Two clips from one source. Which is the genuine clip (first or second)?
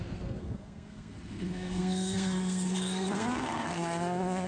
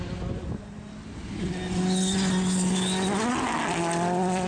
second